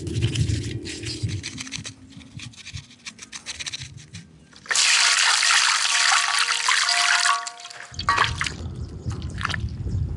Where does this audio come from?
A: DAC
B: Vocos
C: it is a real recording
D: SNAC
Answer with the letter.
C